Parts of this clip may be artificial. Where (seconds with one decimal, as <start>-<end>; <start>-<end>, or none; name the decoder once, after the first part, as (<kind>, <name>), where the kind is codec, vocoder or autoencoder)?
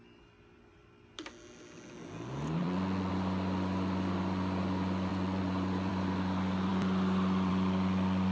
2.6-3.1 (vocoder, Vocos); 5.1-5.9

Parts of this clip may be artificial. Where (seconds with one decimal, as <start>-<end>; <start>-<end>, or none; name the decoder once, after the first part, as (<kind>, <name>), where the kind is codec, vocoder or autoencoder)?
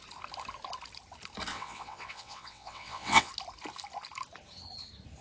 1.5-3.3 (vocoder, WaveNeXt)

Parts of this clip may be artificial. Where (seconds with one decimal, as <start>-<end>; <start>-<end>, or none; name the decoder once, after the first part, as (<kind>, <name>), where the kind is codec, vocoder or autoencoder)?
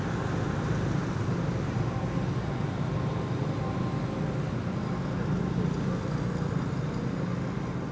none